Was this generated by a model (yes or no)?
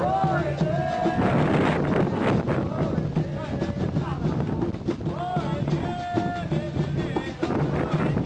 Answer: no